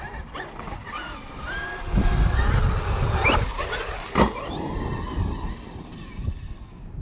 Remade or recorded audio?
recorded